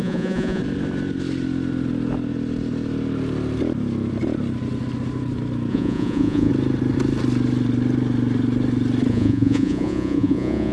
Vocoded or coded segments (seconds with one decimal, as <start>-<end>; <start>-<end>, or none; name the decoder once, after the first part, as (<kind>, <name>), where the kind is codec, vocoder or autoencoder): 0.0-0.6 (vocoder, Vocos); 5.7-6.5; 9.1-10.7